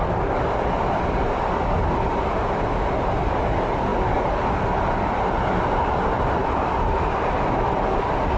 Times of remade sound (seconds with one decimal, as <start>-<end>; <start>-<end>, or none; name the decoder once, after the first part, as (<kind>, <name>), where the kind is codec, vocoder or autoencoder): none